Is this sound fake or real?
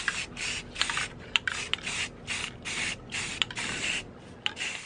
real